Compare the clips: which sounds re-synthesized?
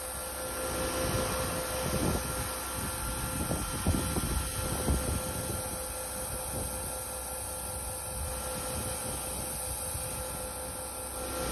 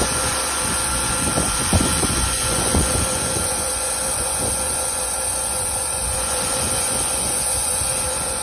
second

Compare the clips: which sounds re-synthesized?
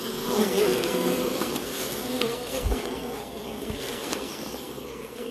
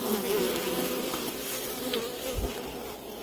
first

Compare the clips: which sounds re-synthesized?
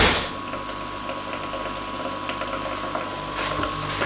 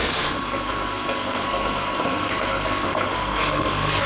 second